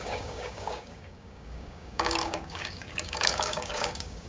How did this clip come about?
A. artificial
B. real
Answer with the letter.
A